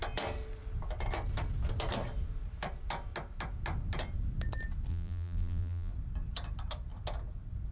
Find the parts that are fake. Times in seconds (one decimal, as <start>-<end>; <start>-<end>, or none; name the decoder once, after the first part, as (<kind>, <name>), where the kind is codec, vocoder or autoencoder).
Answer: 4.9-5.9 (vocoder, BigVGAN v2)